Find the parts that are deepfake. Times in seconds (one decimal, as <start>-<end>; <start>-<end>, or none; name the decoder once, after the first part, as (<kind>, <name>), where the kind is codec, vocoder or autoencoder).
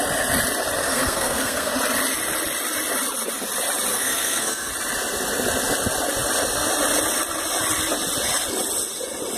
0.8-1.7 (codec, SNAC); 3.9-4.7